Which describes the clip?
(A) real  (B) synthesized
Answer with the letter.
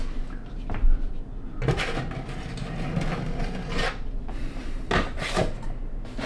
A